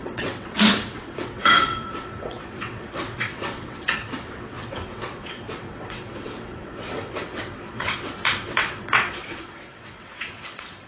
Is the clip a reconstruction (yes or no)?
yes